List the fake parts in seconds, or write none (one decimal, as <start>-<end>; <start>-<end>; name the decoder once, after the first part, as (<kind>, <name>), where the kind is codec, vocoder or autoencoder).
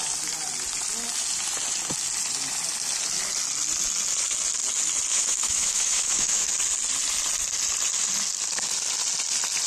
5.1-6.5 (autoencoder, DAC-VAE)